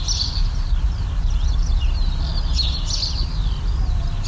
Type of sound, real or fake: real